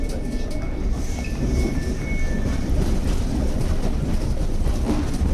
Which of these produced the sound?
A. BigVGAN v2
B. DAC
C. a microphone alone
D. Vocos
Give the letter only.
C